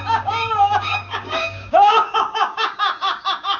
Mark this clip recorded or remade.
remade